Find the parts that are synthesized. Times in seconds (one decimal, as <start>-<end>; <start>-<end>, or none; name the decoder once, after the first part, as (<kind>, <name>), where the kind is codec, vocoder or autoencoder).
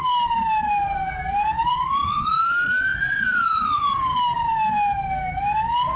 1.6-2.4 (vocoder, Vocos); 2.9-4.0